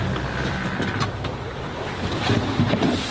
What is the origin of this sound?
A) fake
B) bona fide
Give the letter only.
B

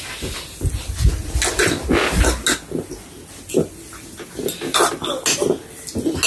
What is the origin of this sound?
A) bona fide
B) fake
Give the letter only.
A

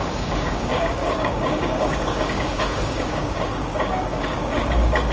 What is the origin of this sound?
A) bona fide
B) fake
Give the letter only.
B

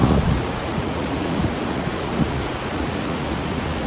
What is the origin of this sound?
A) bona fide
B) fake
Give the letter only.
B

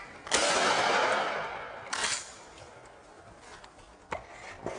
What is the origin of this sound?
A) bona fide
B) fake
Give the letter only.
A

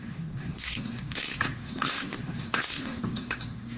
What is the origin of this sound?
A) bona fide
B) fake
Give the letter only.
B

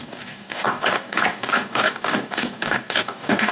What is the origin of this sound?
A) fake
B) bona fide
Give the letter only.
A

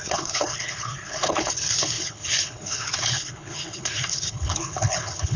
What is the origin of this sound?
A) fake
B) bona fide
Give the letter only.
A